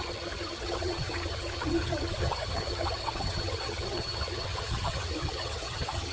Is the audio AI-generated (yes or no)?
yes